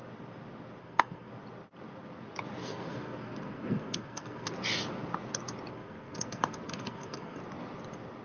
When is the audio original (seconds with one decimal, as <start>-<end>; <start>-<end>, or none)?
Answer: 0.0-0.8; 1.3-2.6; 4.5-5.7; 7.4-8.2